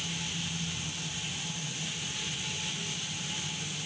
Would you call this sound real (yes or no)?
yes